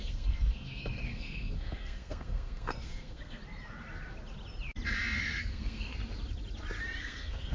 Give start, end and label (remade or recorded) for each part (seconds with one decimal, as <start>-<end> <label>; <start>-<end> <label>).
0.0-3.4 remade; 3.4-5.2 recorded; 5.2-5.9 remade; 5.9-7.0 recorded; 7.0-7.5 remade